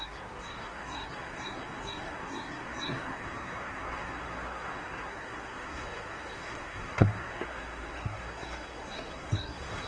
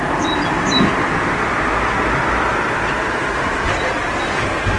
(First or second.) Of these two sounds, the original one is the second